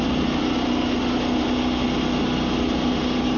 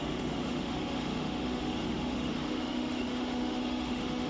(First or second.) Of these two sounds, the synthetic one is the second